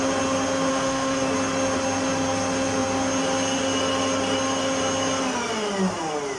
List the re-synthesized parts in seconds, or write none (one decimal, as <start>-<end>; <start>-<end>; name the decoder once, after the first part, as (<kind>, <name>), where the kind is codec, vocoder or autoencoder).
0.7-1.3 (autoencoder, DAC-VAE)